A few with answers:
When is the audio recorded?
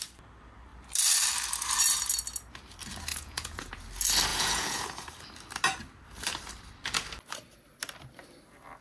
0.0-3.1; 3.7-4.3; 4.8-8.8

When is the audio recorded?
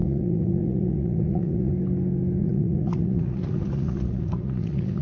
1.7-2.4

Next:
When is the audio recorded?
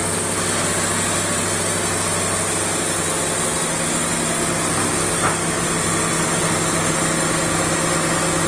0.0-8.5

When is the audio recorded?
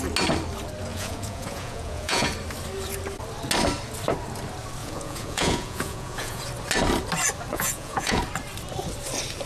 0.0-0.9; 2.3-4.8; 6.4-7.5; 8.2-9.5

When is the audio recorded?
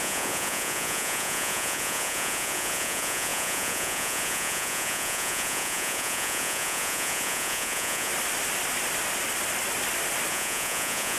8.1-10.3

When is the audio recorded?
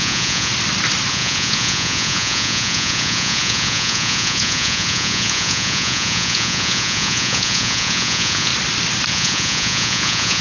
0.5-1.1; 8.5-9.1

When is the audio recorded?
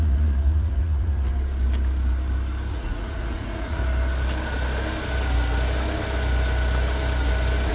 1.3-2.7; 3.8-7.7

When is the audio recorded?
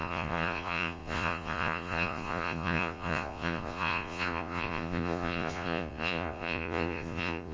none